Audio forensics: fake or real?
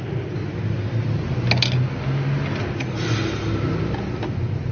real